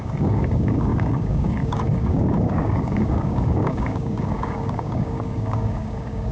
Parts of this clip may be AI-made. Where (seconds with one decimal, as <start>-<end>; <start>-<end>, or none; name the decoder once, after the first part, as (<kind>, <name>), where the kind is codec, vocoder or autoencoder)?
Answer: 0.0-6.3 (codec, DAC)